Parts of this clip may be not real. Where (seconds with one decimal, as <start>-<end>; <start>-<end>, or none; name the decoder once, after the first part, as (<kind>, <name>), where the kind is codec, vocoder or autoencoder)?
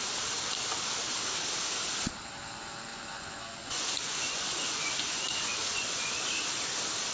2.9-6.1 (vocoder, Vocos)